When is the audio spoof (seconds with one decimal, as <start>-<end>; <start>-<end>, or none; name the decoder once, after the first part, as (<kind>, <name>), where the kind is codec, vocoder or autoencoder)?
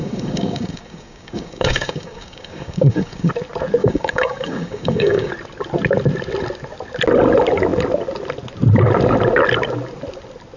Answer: 0.0-3.3 (codec, DAC); 3.8-5.3